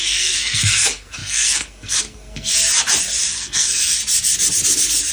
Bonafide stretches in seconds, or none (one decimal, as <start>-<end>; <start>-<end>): 2.5-3.3; 4.0-5.1